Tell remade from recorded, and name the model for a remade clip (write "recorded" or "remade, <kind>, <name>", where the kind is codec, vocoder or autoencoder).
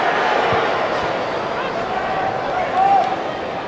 recorded